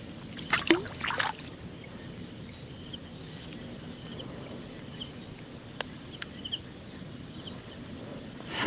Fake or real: real